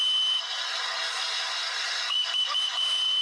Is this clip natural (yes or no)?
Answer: yes